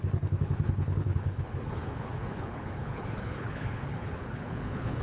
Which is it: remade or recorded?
remade